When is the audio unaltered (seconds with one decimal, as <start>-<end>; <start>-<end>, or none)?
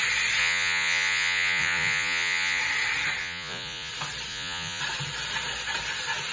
0.0-0.4; 2.6-3.2; 3.9-4.3; 4.8-6.3